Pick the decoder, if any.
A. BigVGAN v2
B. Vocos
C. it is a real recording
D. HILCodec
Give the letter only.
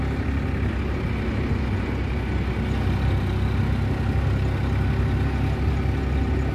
C